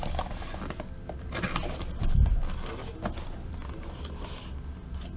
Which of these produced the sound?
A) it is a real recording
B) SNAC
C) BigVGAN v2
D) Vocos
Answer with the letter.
A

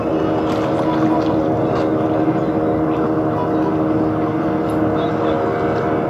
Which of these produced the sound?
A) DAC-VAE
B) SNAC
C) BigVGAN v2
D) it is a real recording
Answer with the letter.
D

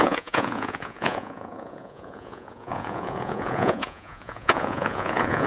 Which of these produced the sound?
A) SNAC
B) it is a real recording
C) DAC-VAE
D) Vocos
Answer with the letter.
D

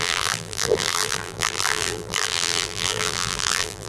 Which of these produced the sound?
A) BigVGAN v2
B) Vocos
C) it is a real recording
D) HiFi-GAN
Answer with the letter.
A